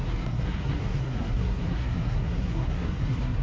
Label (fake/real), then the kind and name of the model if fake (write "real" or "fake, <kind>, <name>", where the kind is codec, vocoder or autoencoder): fake, codec, SNAC